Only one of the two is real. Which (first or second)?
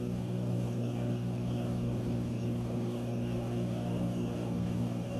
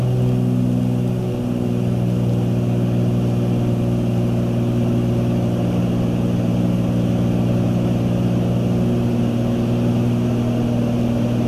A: second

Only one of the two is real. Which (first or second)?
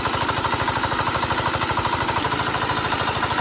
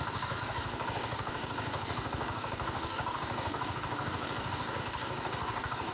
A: first